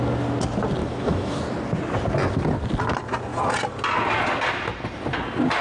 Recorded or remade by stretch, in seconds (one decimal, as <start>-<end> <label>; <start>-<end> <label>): 0.0-0.8 recorded; 0.8-1.4 remade; 1.4-5.6 recorded